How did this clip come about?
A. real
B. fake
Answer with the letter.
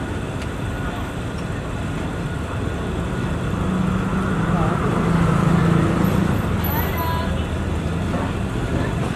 A